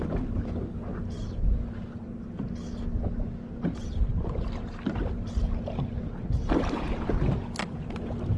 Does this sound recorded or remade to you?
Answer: recorded